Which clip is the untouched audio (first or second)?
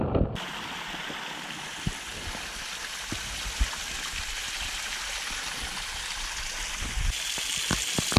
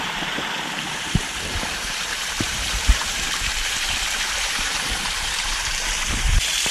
first